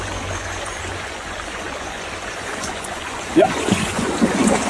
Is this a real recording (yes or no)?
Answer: no